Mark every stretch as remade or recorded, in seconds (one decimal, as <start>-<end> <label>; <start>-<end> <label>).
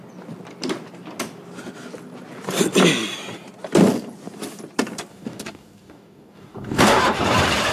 0.0-5.1 recorded; 5.1-7.0 remade; 7.0-7.7 recorded